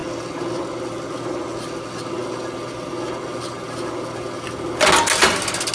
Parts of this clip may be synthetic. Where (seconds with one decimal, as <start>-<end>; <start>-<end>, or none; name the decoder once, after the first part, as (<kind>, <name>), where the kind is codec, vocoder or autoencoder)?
none